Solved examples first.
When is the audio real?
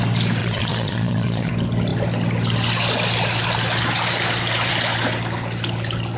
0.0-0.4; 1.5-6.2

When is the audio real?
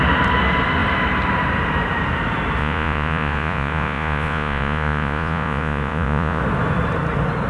0.0-2.6; 6.4-7.5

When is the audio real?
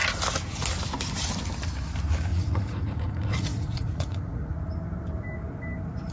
0.0-2.3; 4.5-6.1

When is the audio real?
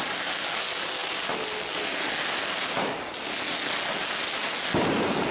0.0-5.3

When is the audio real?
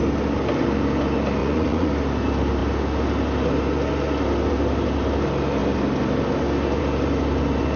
0.0-1.4; 1.9-7.8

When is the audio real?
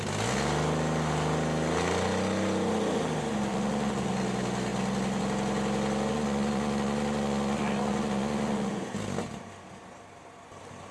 0.0-3.5; 4.1-6.1; 8.9-10.9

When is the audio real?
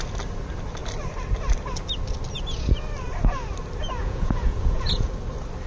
0.0-4.0; 5.1-5.7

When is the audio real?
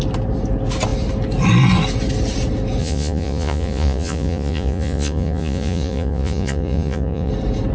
0.0-2.8; 7.3-7.7